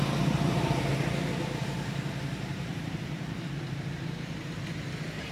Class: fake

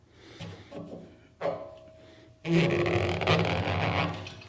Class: real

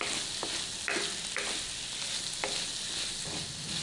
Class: real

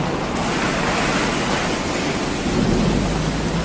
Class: real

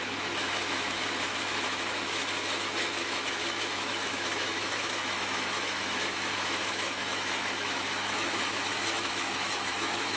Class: fake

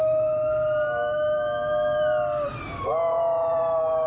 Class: real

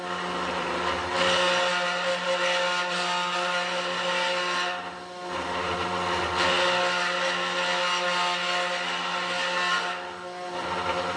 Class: real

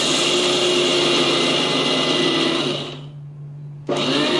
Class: real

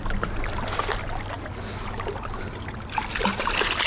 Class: real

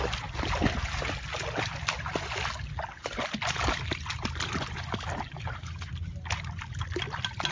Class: real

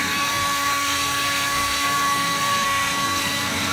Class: fake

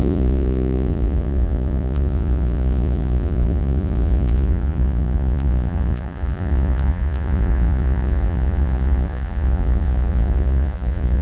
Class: fake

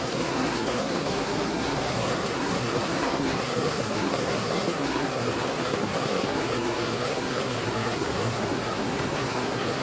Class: fake